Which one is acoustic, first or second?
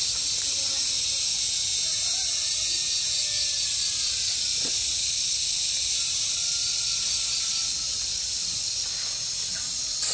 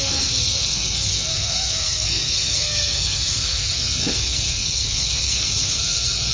first